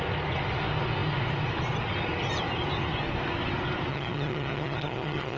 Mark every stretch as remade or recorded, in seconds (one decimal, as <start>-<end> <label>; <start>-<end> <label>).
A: 0.0-3.9 recorded; 3.9-5.4 remade